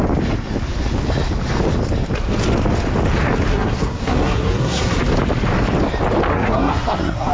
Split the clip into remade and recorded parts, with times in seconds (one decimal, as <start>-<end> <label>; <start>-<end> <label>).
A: 0.0-3.5 recorded; 3.5-5.0 remade; 5.0-6.3 recorded; 6.3-7.3 remade

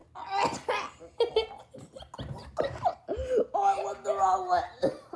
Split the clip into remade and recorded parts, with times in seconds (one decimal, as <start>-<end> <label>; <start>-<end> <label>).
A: 0.0-5.2 recorded